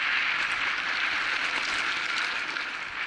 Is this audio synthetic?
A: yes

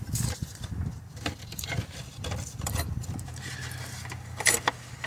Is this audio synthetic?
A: yes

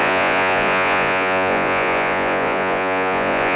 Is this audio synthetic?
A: yes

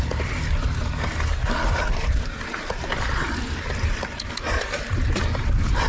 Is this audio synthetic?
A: yes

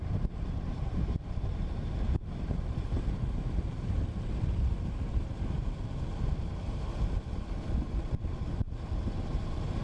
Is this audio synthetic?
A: yes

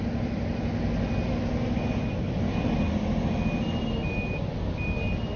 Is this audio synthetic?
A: no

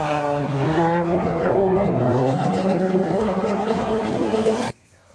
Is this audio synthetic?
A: yes